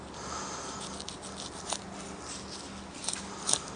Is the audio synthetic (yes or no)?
no